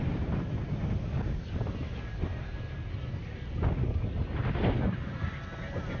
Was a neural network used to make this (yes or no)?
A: no